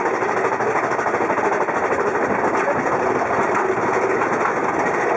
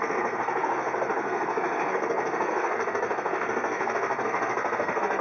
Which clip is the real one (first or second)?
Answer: first